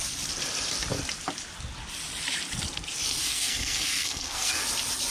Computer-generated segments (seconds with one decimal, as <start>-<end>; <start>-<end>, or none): 3.2-4.6